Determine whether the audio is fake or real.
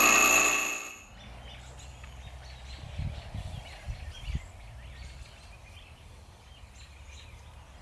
real